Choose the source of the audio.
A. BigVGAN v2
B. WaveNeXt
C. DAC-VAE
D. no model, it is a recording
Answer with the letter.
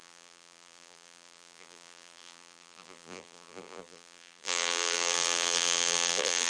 A